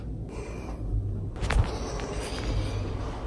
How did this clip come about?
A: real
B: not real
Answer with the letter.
A